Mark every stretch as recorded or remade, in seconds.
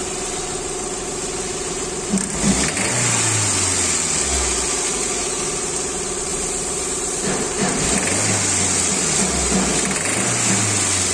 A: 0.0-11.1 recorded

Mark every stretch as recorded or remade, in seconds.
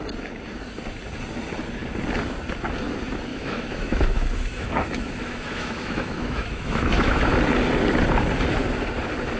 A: 0.0-3.3 recorded; 3.3-7.3 remade; 7.3-9.4 recorded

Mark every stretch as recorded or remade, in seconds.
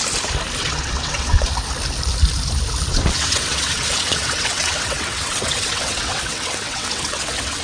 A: 0.0-0.6 recorded; 0.6-1.5 remade; 1.5-2.9 recorded; 2.9-7.6 remade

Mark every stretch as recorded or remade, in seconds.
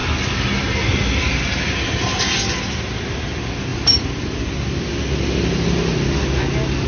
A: 0.0-3.7 recorded; 3.7-4.5 remade; 4.5-6.9 recorded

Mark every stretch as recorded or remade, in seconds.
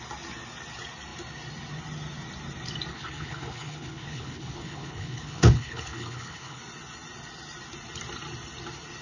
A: 0.0-2.9 recorded; 2.9-6.6 remade; 6.6-9.0 recorded